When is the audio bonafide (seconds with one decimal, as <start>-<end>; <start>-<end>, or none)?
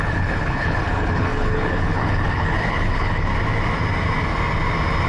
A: 3.3-5.1